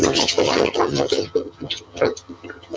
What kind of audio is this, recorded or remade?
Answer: remade